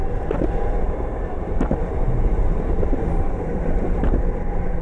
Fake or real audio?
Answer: fake